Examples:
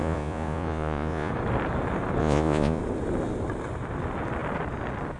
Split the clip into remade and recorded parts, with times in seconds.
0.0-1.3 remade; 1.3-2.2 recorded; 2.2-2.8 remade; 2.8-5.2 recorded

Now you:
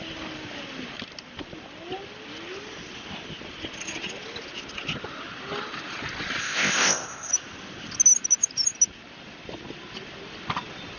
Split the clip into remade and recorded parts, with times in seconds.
0.0-6.4 recorded; 6.4-7.3 remade; 7.3-11.0 recorded

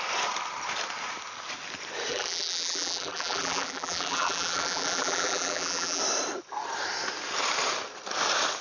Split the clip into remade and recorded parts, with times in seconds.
0.0-2.1 recorded; 2.1-6.0 remade; 6.0-8.6 recorded

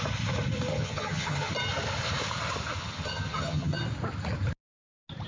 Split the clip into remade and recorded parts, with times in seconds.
0.0-0.7 recorded; 0.7-1.5 remade; 1.5-2.8 recorded; 2.8-3.8 remade; 3.8-5.3 recorded

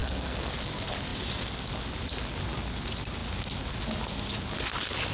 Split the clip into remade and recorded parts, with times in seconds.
0.0-0.5 remade; 0.5-5.1 recorded

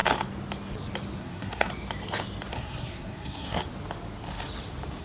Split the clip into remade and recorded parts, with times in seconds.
0.0-1.2 recorded; 1.2-1.7 remade; 1.7-2.5 recorded; 2.5-3.6 remade; 3.6-5.0 recorded

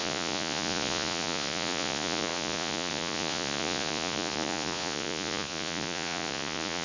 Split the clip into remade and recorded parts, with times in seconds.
0.0-6.8 remade